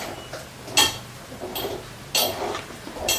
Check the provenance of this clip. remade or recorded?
recorded